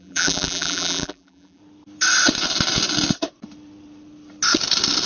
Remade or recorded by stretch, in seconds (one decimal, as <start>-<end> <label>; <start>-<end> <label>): 0.0-1.6 remade; 1.6-5.1 recorded